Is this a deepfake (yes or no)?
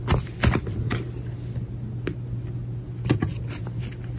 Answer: no